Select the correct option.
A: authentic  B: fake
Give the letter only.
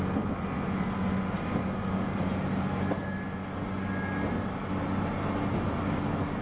A